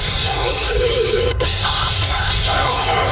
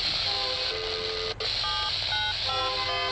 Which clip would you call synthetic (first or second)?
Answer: first